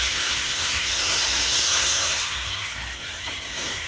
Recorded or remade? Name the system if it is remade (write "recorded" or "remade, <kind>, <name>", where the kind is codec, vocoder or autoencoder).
remade, codec, SNAC